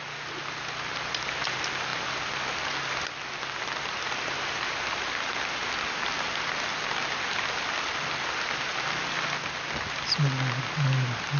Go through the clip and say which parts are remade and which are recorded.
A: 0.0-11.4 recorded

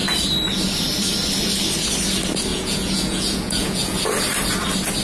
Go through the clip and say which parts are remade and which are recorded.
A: 0.0-2.5 recorded; 2.5-4.1 remade; 4.1-5.0 recorded

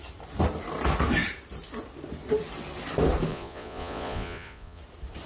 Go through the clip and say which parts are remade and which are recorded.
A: 0.0-3.3 recorded; 3.3-4.8 remade; 4.8-5.3 recorded

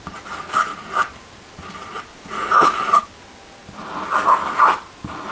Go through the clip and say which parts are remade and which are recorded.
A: 0.0-2.1 recorded; 2.1-3.0 remade; 3.0-5.3 recorded

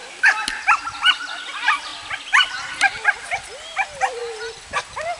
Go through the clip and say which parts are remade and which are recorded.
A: 0.0-5.2 recorded